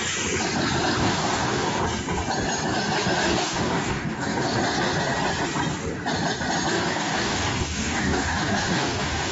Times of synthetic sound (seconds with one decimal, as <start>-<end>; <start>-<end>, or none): 1.0-1.8; 3.2-4.6; 6.7-9.3